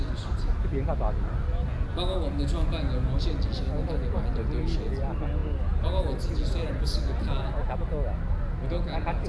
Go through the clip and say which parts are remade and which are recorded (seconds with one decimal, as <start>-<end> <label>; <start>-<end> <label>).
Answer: 0.0-9.3 recorded